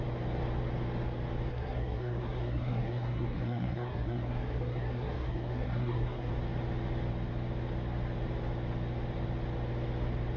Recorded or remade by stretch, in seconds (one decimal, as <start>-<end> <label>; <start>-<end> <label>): 0.0-1.5 recorded; 1.5-6.3 remade; 6.3-10.4 recorded